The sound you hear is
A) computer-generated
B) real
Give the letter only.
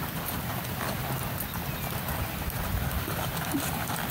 B